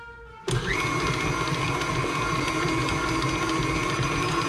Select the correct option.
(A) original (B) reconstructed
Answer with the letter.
A